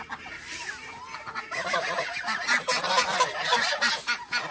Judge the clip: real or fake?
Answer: real